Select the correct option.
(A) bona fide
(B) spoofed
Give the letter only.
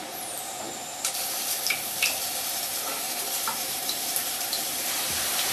B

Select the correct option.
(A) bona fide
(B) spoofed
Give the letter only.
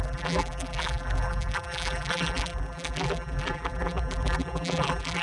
B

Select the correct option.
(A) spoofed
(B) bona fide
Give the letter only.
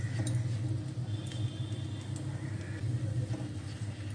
B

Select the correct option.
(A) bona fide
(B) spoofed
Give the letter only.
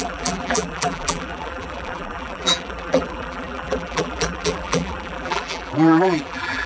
B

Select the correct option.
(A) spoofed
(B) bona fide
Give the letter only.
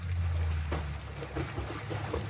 B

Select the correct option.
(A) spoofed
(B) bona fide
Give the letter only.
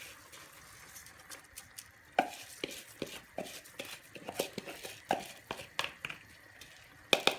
B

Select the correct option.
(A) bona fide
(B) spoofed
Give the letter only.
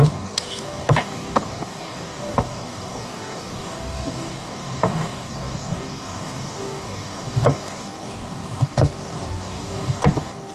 B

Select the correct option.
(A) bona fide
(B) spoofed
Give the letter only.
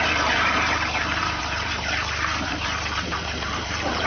B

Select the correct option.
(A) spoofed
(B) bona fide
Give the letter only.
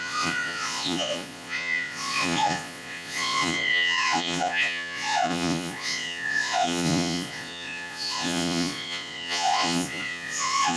A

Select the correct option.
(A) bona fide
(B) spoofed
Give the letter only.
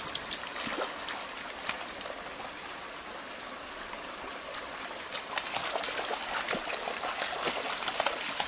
A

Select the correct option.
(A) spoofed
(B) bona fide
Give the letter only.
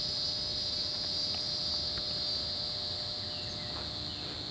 B